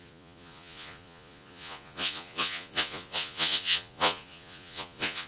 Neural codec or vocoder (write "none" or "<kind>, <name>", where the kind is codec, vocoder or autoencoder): vocoder, Vocos